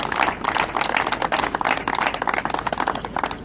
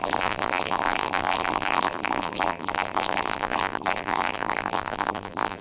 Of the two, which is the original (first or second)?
first